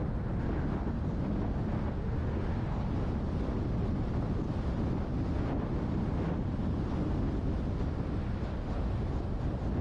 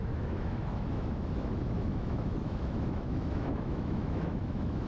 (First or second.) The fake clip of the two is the second